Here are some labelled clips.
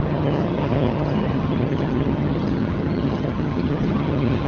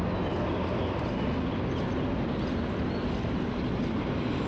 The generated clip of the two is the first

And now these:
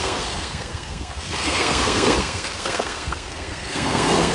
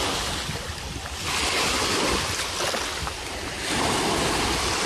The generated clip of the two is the first